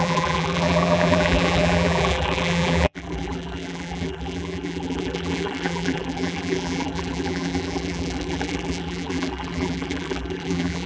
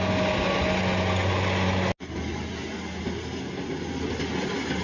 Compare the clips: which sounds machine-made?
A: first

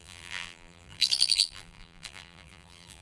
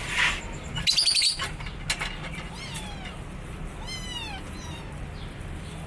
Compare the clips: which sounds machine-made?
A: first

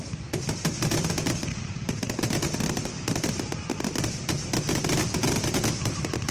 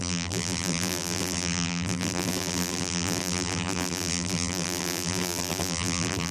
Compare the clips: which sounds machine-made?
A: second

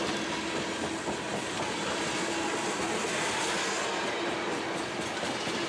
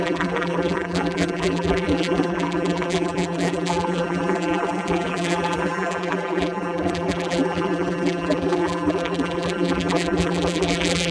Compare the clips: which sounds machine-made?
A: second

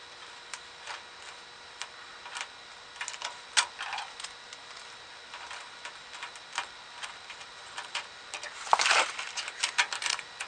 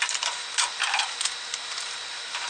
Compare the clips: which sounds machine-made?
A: second